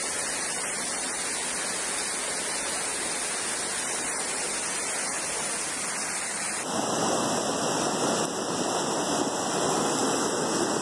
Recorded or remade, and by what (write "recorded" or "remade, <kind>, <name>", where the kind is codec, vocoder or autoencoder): recorded